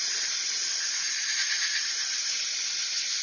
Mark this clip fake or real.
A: real